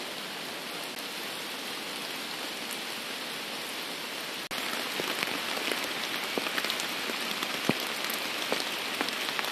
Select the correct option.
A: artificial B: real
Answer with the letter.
B